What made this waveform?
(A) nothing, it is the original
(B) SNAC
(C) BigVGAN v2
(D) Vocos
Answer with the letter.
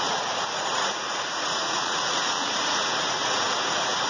D